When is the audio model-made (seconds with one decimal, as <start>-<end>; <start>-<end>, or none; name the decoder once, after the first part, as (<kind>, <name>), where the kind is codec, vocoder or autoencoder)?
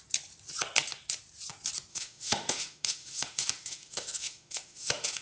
1.9-5.2 (autoencoder, DAC-VAE)